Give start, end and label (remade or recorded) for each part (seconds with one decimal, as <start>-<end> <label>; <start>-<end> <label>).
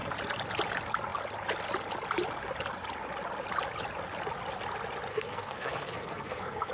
0.0-5.1 recorded; 5.1-6.7 remade